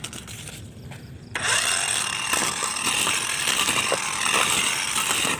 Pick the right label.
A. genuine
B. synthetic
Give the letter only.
A